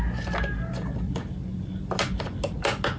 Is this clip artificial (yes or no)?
no